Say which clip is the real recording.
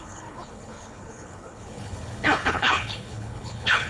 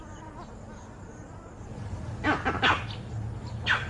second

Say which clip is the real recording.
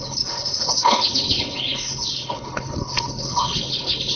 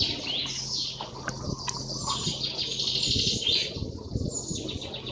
second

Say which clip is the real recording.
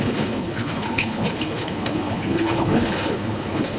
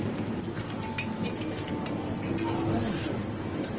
second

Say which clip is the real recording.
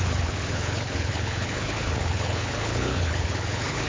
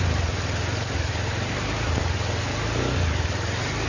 second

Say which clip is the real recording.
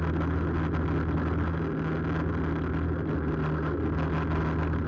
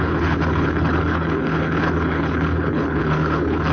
first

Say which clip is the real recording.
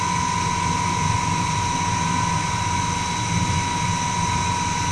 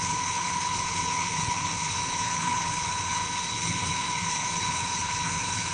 first